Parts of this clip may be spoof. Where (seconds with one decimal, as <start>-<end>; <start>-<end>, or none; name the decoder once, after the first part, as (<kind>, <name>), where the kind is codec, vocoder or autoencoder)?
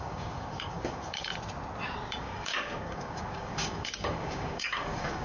0.0-1.3 (codec, DAC); 2.2-5.2